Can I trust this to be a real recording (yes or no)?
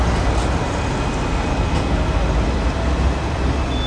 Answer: yes